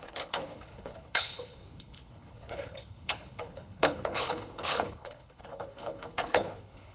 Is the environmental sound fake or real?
fake